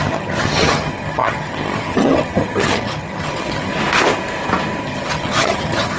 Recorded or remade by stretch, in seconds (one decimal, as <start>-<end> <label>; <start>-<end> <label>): 0.0-3.7 remade; 3.7-4.8 recorded; 4.8-6.0 remade